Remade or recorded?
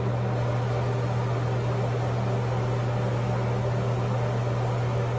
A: recorded